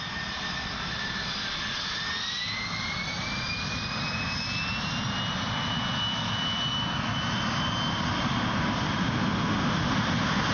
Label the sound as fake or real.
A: real